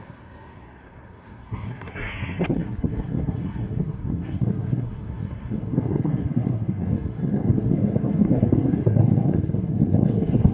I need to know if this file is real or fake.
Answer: fake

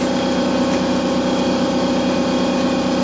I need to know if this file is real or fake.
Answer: real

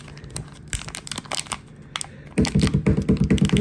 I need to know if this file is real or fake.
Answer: real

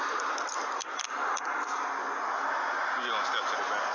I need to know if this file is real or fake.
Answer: real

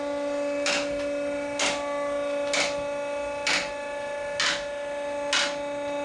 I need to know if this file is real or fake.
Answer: real